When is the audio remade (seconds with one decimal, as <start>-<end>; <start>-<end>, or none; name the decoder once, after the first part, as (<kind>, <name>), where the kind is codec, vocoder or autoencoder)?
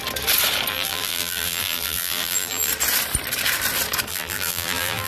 0.7-2.7 (vocoder, BigVGAN v2); 4.1-5.1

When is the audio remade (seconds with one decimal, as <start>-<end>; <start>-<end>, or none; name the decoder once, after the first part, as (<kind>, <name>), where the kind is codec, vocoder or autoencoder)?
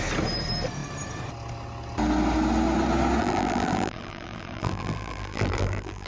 3.2-6.1 (vocoder, BigVGAN v2)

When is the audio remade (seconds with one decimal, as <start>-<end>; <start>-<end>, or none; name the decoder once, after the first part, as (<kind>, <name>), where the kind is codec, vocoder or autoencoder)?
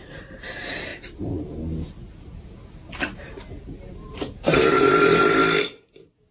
0.0-0.9 (vocoder, BigVGAN v2); 3.9-5.2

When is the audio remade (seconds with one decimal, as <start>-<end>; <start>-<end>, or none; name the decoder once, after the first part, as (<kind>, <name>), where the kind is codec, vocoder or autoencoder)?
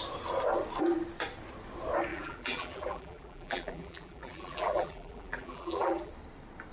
2.1-6.1 (vocoder, BigVGAN v2)